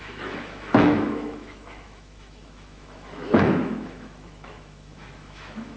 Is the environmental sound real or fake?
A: fake